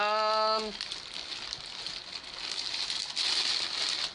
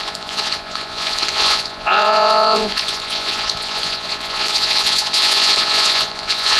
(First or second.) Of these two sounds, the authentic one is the first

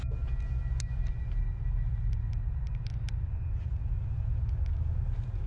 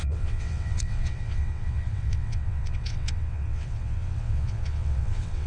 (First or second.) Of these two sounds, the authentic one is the first